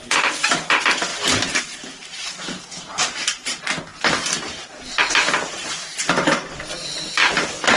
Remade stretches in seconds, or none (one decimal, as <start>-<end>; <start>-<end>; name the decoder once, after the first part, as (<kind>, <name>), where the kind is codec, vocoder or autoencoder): 2.0-3.5 (vocoder, BigVGAN v2)